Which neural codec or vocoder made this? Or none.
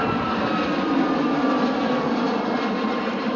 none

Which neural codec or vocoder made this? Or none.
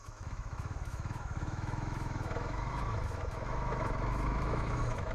autoencoder, DAC-VAE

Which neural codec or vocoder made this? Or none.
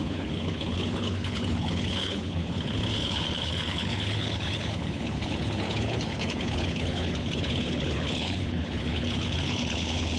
codec, HILCodec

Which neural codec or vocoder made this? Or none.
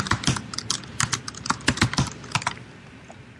none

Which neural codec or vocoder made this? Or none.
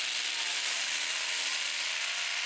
none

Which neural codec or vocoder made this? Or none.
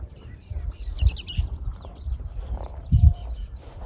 vocoder, BigVGAN v2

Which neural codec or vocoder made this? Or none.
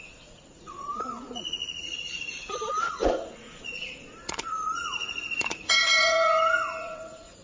vocoder, Vocos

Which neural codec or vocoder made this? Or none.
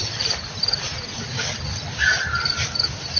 none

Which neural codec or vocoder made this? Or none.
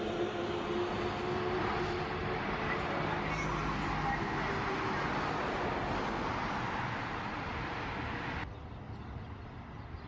none